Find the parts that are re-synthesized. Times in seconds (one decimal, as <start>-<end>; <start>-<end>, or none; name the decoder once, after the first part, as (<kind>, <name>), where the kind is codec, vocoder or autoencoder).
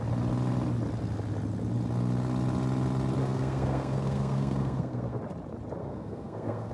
3.2-5.2 (codec, SNAC); 5.8-6.7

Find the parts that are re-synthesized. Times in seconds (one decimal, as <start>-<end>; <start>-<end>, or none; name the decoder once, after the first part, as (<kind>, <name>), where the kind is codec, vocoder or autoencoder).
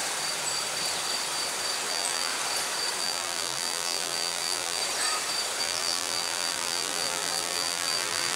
1.9-2.3 (vocoder, BigVGAN v2); 3.0-4.8; 5.6-8.4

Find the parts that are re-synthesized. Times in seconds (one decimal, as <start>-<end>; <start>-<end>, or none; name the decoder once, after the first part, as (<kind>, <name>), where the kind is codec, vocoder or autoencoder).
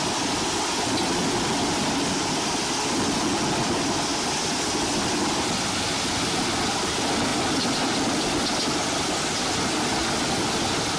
none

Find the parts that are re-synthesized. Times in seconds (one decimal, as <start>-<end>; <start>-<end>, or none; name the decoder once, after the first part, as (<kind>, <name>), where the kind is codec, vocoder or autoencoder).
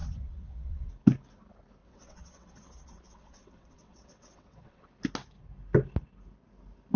0.0-0.9 (vocoder, WaveNeXt); 1.8-4.9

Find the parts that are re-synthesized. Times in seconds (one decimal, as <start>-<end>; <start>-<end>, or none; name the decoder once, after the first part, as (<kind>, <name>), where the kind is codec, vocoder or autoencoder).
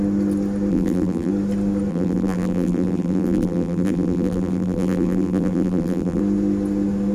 0.7-1.3 (vocoder, BigVGAN v2); 1.9-6.2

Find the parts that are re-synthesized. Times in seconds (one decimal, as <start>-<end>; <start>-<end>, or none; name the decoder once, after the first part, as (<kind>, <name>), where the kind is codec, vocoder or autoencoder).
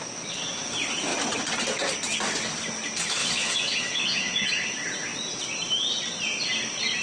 3.2-4.5 (vocoder, Vocos)